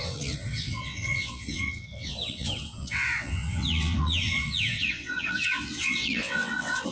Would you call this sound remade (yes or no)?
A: yes